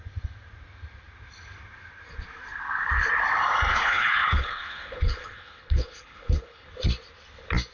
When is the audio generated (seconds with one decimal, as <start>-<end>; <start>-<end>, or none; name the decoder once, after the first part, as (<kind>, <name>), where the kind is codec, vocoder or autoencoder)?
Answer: 3.7-6.7 (codec, HILCodec)